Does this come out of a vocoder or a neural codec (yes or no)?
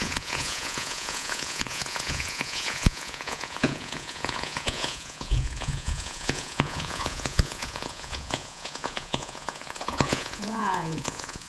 yes